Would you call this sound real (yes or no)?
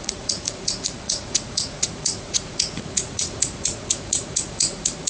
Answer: no